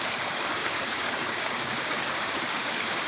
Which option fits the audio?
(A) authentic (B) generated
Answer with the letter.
B